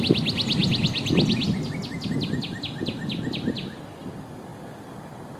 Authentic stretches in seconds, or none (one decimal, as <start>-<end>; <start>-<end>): 0.0-5.4